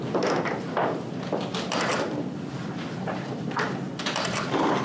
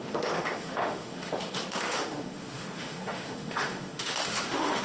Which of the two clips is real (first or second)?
first